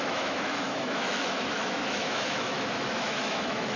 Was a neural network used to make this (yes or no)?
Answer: yes